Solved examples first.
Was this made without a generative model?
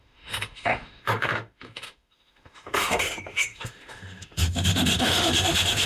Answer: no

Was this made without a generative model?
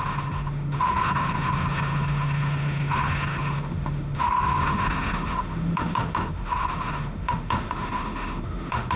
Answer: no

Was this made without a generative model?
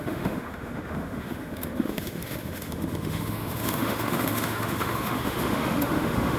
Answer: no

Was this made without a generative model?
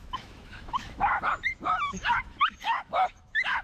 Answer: no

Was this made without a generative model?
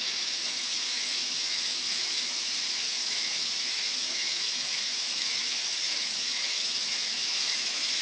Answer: no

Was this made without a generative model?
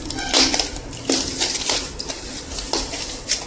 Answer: yes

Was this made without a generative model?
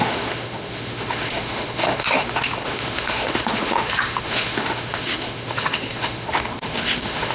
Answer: no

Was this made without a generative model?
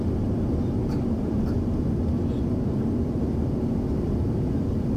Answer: yes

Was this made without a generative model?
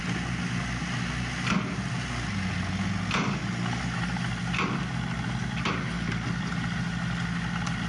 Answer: yes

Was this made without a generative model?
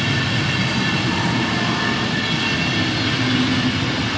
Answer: yes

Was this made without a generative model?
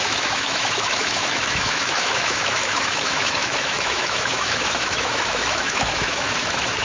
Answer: no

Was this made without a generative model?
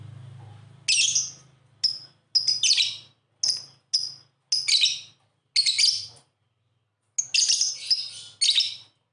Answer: yes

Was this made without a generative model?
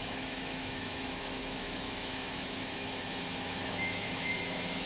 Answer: no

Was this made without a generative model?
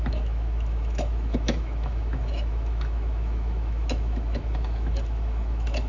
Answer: no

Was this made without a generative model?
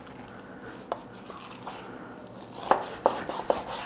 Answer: yes